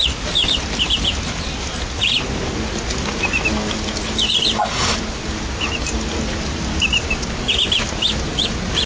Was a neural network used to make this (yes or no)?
no